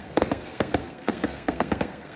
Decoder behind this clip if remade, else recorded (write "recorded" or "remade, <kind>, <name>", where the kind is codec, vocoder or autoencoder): remade, codec, SNAC